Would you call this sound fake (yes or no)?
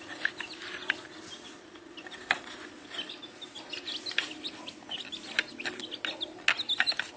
no